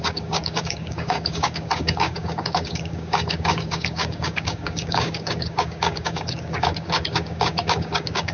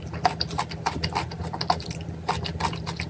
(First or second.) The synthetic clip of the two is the first